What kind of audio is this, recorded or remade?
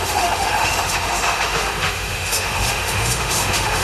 remade